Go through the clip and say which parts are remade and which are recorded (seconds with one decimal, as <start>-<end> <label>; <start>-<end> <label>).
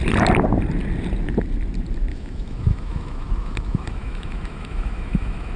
0.0-2.1 recorded; 2.1-5.6 remade